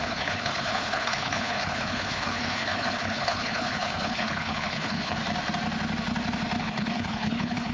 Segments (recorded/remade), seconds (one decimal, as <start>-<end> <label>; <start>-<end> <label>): 0.0-5.2 remade; 5.2-6.6 recorded; 6.6-7.7 remade